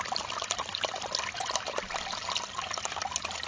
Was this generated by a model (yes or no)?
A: no